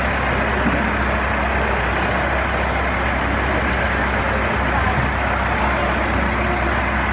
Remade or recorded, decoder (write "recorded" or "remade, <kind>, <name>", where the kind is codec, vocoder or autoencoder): recorded